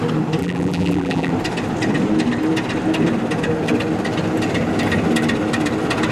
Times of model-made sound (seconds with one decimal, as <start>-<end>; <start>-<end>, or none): 0.4-1.3